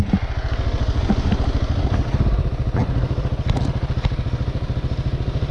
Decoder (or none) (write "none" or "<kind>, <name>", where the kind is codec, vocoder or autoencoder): none